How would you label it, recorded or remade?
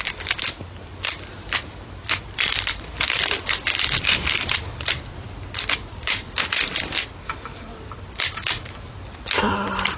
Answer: recorded